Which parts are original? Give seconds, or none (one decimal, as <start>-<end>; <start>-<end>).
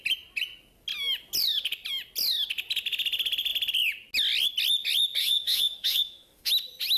0.0-5.2; 6.5-7.0